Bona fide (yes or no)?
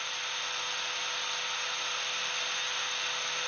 yes